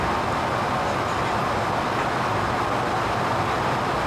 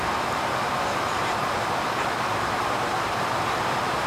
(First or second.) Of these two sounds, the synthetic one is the second